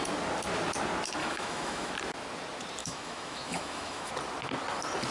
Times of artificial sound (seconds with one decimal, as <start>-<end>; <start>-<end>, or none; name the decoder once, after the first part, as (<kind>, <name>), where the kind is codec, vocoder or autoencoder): 1.2-1.9 (autoencoder, DAC-VAE); 2.8-4.1